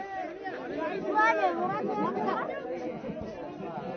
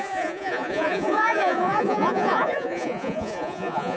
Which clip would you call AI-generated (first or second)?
second